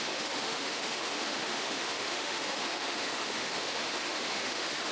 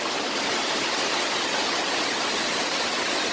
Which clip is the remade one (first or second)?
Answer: first